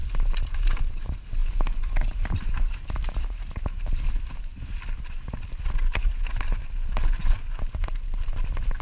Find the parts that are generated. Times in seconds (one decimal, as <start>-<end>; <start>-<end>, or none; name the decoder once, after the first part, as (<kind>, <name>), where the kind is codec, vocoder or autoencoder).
0.0-0.8 (vocoder, BigVGAN v2); 1.4-6.4; 7.2-8.4